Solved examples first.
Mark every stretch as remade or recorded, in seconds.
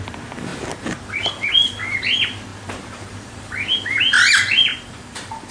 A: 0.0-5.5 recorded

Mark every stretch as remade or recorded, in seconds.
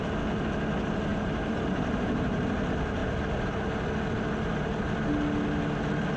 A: 0.0-1.1 recorded; 1.1-2.5 remade; 2.5-6.2 recorded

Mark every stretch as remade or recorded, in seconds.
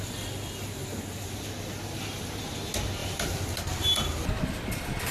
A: 0.0-3.0 recorded; 3.0-5.1 remade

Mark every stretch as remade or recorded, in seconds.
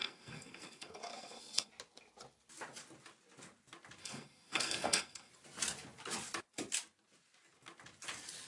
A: 0.0-1.7 remade; 1.7-4.0 recorded; 4.0-5.3 remade; 5.3-8.5 recorded